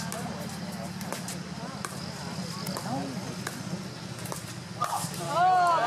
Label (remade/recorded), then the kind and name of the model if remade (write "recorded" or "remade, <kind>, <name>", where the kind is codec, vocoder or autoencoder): recorded